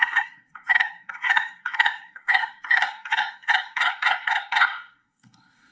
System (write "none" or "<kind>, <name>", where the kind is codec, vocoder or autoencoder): codec, SNAC